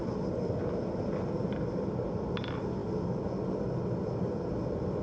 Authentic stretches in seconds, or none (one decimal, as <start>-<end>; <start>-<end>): 0.0-5.0

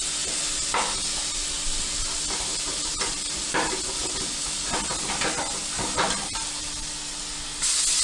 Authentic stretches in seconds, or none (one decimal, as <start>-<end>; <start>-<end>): 0.0-2.5; 3.7-8.0

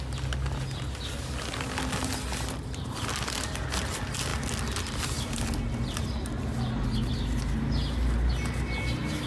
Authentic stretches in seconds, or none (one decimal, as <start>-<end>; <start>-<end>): 0.0-9.3

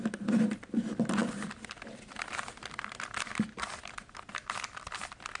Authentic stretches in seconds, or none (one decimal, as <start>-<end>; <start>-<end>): none

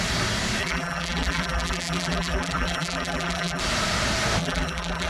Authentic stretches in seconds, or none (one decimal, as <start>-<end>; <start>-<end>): 0.0-0.6; 3.6-4.4